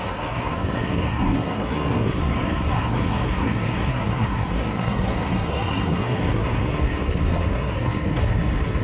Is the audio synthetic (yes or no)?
yes